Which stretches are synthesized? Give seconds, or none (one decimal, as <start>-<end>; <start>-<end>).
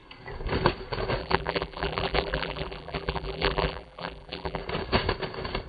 1.2-4.6